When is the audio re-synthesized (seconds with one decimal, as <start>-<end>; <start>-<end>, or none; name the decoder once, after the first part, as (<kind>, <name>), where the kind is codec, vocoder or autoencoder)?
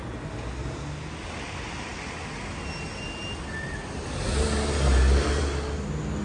none